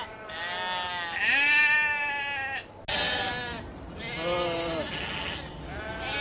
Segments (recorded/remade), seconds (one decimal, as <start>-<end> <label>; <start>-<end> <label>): 0.0-6.2 recorded